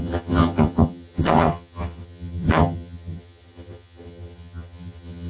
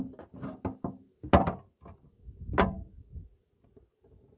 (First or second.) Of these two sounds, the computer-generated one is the first